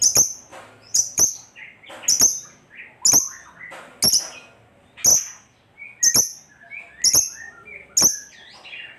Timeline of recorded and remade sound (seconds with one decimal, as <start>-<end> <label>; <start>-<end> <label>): 0.0-0.5 recorded; 0.5-1.3 remade; 1.3-9.0 recorded